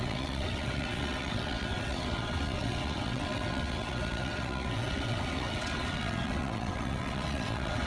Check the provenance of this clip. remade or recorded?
remade